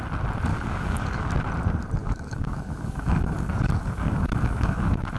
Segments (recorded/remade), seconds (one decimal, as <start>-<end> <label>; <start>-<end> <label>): 0.0-0.5 recorded; 0.5-1.3 remade; 1.3-2.0 recorded; 2.0-5.2 remade

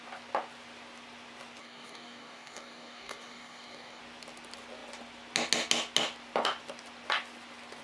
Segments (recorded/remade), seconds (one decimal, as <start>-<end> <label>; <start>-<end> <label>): 0.0-1.6 recorded; 1.6-4.0 remade; 4.0-7.8 recorded

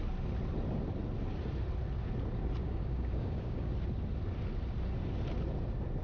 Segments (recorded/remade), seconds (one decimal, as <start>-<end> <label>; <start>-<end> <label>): 0.0-2.6 recorded; 2.6-3.7 remade; 3.7-6.0 recorded

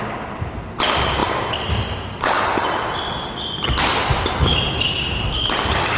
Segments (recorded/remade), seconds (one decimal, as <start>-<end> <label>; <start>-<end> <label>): 0.0-6.0 recorded